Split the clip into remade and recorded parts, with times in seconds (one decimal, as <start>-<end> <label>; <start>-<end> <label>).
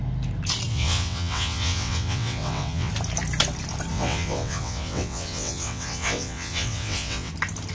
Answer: 0.0-0.7 recorded; 0.7-2.9 remade; 2.9-3.9 recorded; 3.9-7.3 remade; 7.3-7.7 recorded